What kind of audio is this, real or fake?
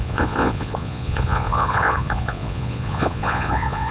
fake